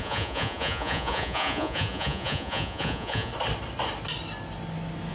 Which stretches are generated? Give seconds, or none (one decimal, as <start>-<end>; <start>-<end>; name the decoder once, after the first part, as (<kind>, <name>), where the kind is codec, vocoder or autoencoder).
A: 0.0-3.3 (vocoder, Vocos)

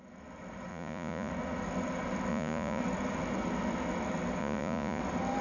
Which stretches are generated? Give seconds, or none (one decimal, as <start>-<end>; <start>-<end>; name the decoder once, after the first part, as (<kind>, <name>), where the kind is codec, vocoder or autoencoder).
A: 0.7-1.3 (vocoder, Vocos); 2.3-2.8; 4.4-5.0